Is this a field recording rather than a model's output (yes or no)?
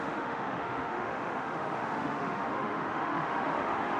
no